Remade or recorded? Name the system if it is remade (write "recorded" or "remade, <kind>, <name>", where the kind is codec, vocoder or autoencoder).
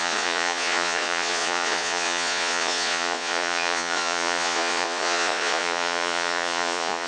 remade, vocoder, Vocos